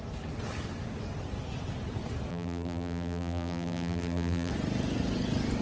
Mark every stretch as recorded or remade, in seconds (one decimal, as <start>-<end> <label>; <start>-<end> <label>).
0.0-2.3 recorded; 2.3-4.5 remade; 4.5-5.6 recorded